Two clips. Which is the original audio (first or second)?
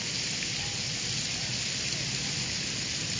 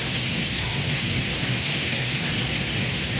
first